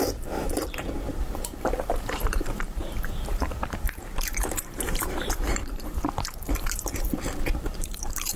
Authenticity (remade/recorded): remade